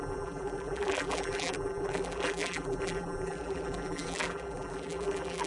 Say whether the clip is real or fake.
fake